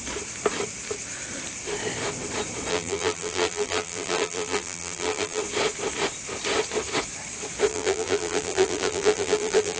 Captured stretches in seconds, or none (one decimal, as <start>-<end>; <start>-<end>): 0.0-2.7; 5.4-7.7